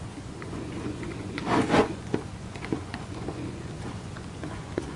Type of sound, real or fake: fake